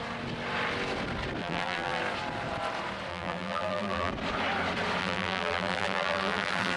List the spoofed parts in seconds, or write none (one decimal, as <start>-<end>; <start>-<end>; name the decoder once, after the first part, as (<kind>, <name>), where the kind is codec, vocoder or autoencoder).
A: 1.4-2.0 (vocoder, BigVGAN v2); 3.1-4.1; 5.0-6.8